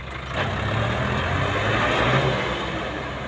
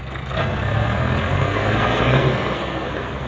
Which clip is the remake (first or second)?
second